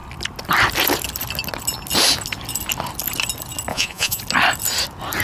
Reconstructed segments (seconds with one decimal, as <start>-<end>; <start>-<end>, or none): 3.7-4.2